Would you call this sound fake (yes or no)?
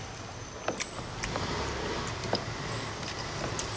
no